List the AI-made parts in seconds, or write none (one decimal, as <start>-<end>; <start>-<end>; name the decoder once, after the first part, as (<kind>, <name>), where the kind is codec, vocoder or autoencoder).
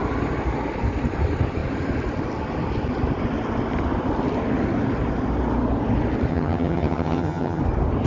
6.3-7.6 (vocoder, HiFi-GAN)